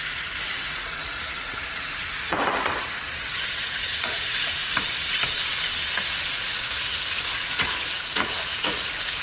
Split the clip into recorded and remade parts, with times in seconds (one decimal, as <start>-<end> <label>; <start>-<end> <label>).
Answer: 0.0-4.6 remade; 4.6-6.3 recorded; 6.3-9.2 remade